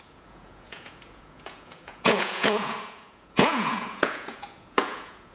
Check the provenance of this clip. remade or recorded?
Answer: remade